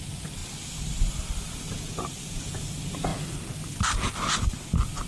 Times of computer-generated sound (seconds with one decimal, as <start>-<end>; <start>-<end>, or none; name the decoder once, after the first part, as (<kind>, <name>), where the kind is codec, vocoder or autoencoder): none